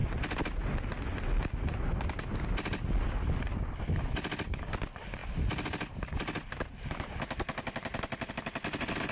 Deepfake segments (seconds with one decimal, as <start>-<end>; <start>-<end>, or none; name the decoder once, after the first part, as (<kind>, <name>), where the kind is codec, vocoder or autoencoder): 5.2-8.3 (vocoder, BigVGAN v2)